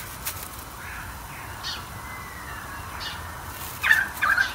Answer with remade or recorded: recorded